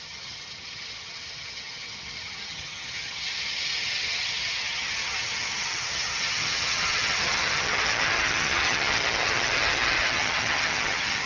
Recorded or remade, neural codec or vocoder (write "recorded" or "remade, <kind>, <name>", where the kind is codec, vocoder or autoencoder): remade, vocoder, HiFi-GAN